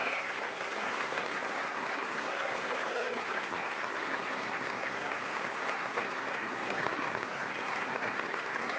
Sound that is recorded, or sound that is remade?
remade